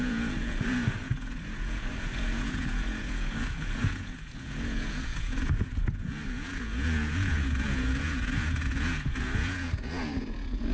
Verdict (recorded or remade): remade